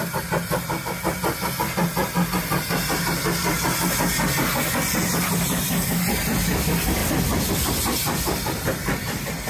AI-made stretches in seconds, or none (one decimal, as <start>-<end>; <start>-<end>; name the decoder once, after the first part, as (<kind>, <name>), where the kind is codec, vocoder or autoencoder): none

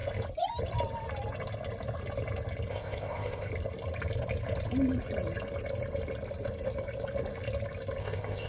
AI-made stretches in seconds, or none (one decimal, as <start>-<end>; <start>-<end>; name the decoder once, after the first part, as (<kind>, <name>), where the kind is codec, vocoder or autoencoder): 2.7-3.5 (codec, ZipCodec); 8.0-8.5

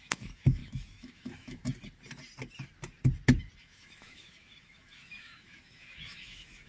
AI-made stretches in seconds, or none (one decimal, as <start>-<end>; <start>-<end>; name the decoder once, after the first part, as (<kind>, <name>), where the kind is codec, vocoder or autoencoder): 0.0-1.7 (autoencoder, DAC-VAE); 3.6-6.7

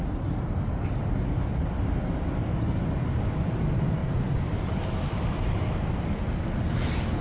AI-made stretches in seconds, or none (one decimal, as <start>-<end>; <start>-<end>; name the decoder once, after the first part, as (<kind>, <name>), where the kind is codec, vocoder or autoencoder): none

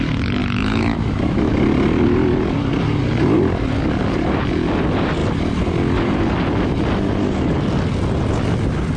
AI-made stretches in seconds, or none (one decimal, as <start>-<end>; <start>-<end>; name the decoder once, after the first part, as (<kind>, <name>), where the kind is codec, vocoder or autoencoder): 0.4-1.5 (autoencoder, DAC-VAE)

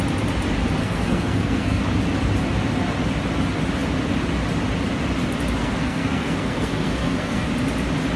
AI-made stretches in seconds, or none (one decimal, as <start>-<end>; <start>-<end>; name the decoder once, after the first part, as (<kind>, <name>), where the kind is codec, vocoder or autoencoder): 0.8-1.8 (codec, SNAC); 5.6-7.5

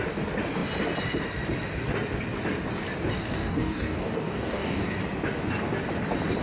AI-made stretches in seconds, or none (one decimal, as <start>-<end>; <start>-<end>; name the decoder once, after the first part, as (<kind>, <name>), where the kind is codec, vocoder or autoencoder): 3.2-4.9 (codec, DAC)